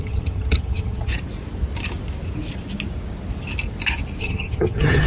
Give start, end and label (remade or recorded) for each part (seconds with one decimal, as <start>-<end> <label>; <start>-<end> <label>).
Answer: 0.0-1.1 remade; 1.1-4.2 recorded; 4.2-5.1 remade

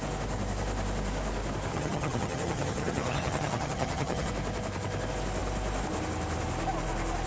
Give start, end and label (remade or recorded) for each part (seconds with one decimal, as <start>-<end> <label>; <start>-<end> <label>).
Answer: 0.0-1.7 recorded; 1.7-4.3 remade; 4.3-7.3 recorded

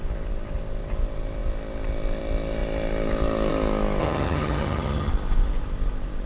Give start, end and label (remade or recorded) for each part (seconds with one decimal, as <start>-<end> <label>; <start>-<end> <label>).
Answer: 0.0-4.0 recorded; 4.0-5.1 remade; 5.1-6.3 recorded

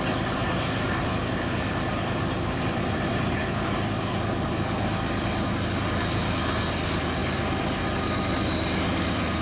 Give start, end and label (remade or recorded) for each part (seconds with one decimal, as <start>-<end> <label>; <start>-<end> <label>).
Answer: 0.0-9.4 recorded

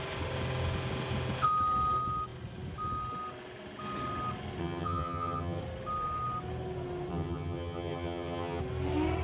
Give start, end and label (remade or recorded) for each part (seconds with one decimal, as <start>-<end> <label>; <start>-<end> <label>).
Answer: 0.0-4.6 recorded; 4.6-5.6 remade; 5.6-7.1 recorded; 7.1-8.6 remade; 8.6-9.2 recorded